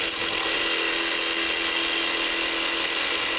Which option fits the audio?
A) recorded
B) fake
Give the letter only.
A